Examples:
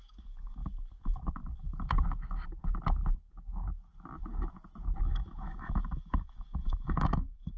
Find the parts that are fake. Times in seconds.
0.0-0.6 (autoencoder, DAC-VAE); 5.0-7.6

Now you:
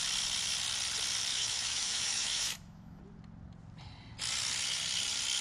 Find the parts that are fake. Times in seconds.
1.3-3.0 (autoencoder, DAC-VAE)

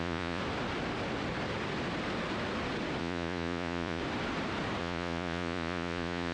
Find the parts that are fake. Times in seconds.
0.0-0.4 (vocoder, Vocos); 3.0-4.0; 4.8-6.3

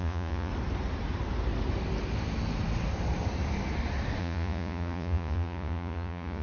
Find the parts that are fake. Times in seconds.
0.0-0.5 (vocoder, Vocos); 4.2-6.4